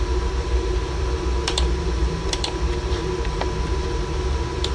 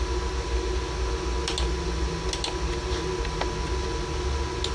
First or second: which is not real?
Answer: first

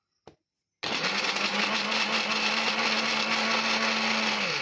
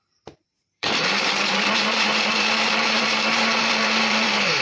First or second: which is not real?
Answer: second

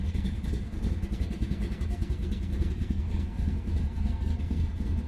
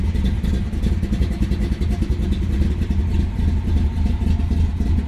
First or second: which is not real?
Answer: first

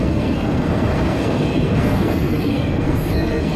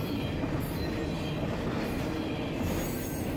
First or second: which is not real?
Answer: first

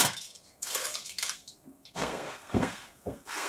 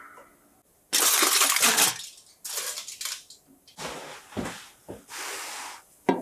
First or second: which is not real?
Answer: first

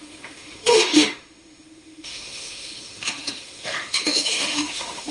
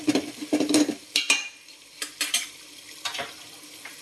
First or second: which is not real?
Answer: first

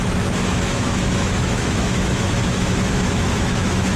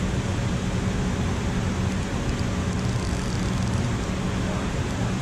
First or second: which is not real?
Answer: first